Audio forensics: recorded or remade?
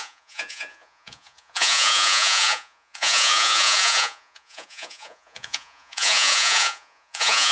remade